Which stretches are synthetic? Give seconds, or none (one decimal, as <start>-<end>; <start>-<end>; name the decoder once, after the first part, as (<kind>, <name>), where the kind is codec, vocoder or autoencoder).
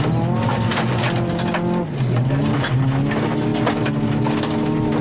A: none